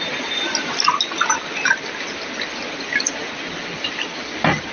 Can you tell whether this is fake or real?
real